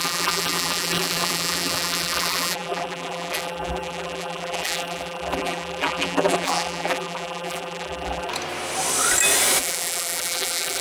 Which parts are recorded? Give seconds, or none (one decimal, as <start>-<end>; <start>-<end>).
8.3-9.6